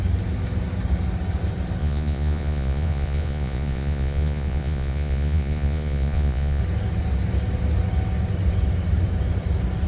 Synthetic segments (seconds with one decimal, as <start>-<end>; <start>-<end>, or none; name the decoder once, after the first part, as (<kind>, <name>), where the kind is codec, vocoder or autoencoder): 1.8-6.6 (vocoder, Vocos)